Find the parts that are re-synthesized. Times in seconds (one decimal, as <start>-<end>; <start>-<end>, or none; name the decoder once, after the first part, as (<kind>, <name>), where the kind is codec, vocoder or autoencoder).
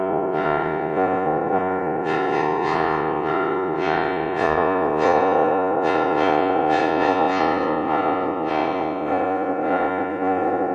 0.0-10.7 (vocoder, Vocos)